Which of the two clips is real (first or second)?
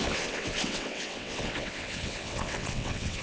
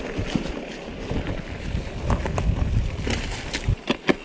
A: second